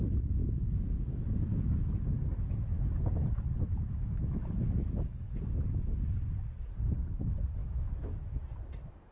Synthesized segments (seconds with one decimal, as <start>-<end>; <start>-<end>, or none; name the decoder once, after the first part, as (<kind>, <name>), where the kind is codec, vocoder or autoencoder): 0.4-5.4 (autoencoder, DAC-VAE); 7.6-8.5